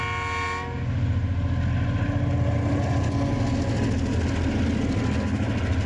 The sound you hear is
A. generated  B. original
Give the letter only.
B